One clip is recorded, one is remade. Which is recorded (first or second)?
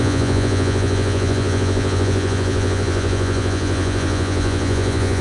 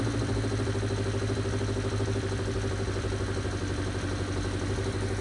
second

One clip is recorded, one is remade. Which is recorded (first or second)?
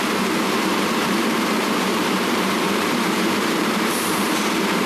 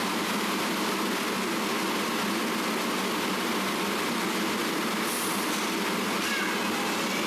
second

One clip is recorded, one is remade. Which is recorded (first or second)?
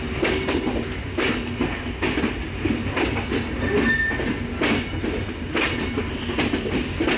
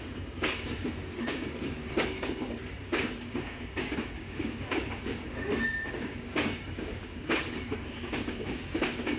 first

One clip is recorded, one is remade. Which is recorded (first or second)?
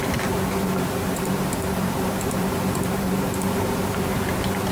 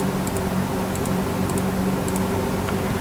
second